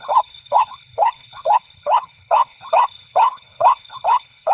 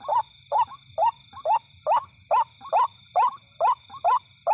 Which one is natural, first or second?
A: second